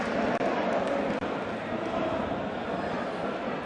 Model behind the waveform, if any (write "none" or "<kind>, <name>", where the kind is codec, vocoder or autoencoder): none